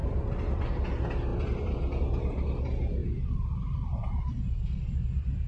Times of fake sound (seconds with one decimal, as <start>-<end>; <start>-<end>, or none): 0.0-0.7; 1.3-2.0; 3.0-4.2